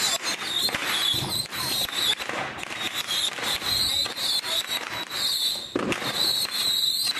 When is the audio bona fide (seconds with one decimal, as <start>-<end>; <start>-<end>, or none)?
0.0-7.2